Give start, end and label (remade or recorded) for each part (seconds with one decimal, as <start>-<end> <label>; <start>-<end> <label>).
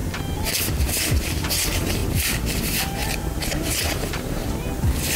0.0-0.8 recorded; 0.8-2.0 remade; 2.0-2.6 recorded; 2.6-4.4 remade; 4.4-5.2 recorded